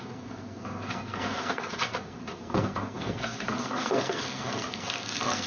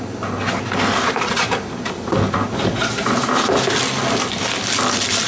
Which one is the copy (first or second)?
first